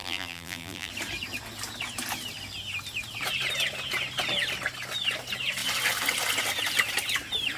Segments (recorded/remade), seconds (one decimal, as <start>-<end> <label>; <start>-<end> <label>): 0.0-0.9 remade; 0.9-7.6 recorded